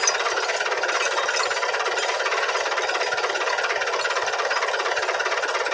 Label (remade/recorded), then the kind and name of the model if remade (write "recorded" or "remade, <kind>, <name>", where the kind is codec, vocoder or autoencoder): recorded